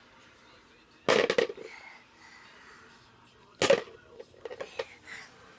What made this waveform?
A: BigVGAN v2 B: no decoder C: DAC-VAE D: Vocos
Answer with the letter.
B